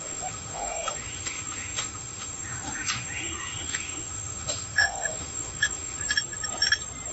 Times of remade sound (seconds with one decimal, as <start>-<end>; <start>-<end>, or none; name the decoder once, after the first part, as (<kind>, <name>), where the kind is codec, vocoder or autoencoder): 0.0-6.0 (autoencoder, DAC-VAE)